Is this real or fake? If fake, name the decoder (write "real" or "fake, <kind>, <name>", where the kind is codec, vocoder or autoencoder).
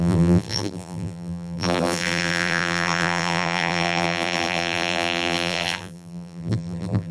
fake, vocoder, BigVGAN v2